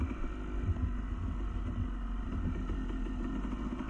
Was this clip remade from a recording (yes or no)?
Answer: no